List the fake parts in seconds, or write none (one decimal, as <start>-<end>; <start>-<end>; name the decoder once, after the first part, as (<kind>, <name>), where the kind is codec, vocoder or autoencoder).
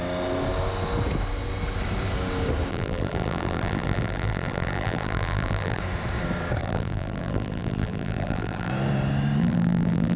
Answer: 2.7-5.8 (vocoder, BigVGAN v2); 6.6-8.7; 9.4-10.2